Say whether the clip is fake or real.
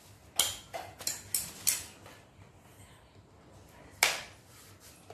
real